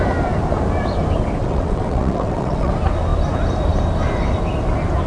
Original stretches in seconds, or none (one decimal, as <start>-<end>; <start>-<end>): 0.0-1.4; 2.7-5.1